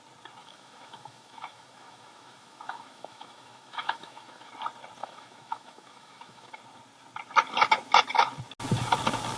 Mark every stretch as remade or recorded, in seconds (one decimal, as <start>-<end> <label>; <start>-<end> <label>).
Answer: 0.0-0.4 recorded; 0.4-4.5 remade; 4.5-5.0 recorded; 5.0-6.6 remade; 6.6-9.4 recorded